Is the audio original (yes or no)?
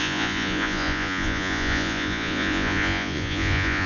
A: no